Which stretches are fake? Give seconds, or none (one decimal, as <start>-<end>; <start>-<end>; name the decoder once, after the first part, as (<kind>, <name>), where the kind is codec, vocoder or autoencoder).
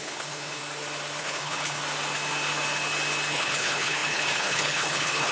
0.0-0.6 (codec, HILCodec); 1.2-1.8; 3.3-5.3